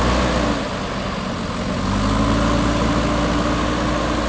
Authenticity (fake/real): real